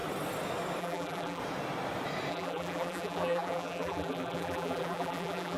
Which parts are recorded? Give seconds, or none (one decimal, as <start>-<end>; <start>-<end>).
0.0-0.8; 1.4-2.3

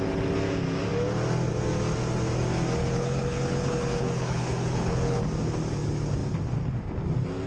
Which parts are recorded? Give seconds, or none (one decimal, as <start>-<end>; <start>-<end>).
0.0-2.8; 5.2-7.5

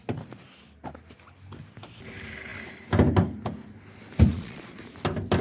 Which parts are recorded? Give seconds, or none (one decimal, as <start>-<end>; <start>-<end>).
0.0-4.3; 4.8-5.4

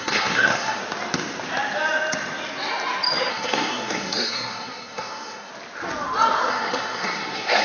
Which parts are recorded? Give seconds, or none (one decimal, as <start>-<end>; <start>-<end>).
0.8-3.3; 5.5-6.5